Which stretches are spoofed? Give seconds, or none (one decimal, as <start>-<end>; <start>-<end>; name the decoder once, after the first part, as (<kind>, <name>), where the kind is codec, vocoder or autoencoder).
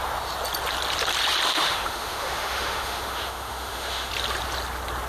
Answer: 1.5-4.1 (autoencoder, DAC-VAE)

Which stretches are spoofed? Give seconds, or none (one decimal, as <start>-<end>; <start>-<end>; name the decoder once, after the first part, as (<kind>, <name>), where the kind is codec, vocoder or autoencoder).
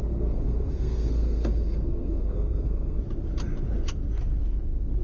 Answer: 0.0-3.0 (codec, SNAC)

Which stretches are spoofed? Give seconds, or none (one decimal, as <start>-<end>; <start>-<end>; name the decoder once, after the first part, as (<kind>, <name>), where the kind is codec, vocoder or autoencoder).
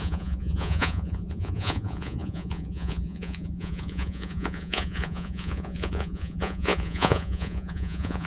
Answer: 0.0-8.3 (vocoder, Vocos)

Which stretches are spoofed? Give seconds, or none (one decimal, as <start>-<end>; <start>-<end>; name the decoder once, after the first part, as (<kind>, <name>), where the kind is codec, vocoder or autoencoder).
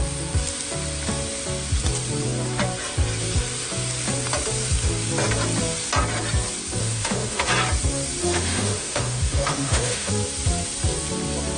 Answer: 6.8-7.5 (autoencoder, DAC-VAE); 8.2-10.1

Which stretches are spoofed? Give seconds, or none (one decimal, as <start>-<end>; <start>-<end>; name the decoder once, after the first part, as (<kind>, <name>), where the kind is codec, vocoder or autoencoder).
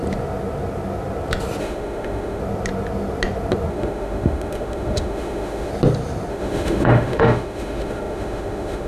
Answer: 1.6-2.4 (autoencoder, DAC-VAE); 3.7-5.7; 6.3-8.9